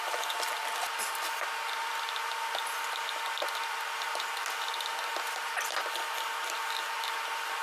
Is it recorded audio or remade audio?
recorded